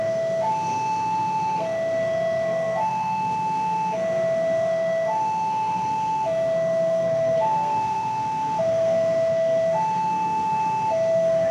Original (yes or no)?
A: no